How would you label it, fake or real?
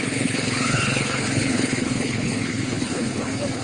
fake